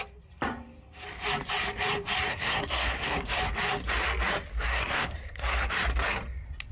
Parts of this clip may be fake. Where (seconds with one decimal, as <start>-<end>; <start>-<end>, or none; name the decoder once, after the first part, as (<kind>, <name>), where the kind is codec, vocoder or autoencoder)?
2.3-3.4 (codec, SNAC); 4.5-5.7